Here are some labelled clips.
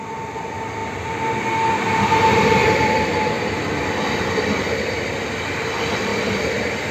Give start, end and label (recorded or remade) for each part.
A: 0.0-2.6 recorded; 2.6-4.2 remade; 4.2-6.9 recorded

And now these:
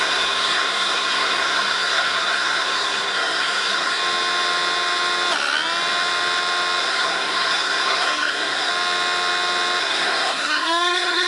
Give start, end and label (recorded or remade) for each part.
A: 0.0-4.0 remade; 4.0-6.8 recorded; 6.8-8.7 remade; 8.7-9.8 recorded; 9.8-11.3 remade

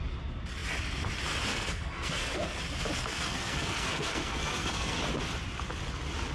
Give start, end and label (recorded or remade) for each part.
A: 0.0-1.5 recorded; 1.5-2.6 remade; 2.6-3.1 recorded; 3.1-5.0 remade; 5.0-6.3 recorded

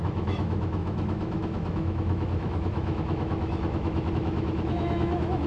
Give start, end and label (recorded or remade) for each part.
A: 0.0-5.5 remade

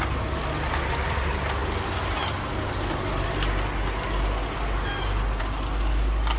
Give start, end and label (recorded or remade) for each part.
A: 0.0-6.4 recorded

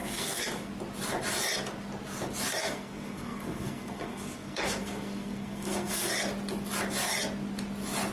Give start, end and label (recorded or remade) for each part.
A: 0.0-0.7 remade; 0.7-2.6 recorded; 2.6-6.1 remade; 6.1-8.1 recorded

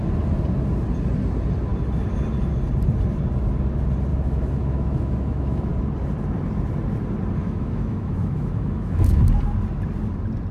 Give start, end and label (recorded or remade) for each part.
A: 0.0-4.1 recorded; 4.1-5.7 remade; 5.7-7.4 recorded; 7.4-9.2 remade; 9.2-10.5 recorded